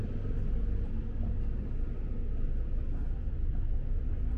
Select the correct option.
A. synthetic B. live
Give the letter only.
B